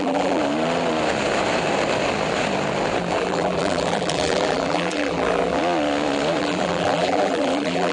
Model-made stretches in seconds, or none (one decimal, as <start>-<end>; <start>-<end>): 0.0-0.4; 3.1-5.6; 6.4-7.9